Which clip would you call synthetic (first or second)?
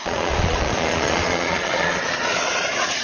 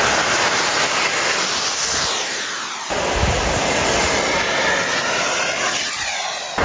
first